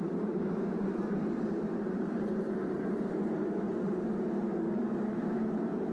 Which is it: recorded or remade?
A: remade